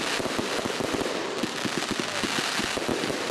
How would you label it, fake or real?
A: real